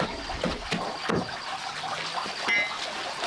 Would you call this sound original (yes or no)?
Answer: yes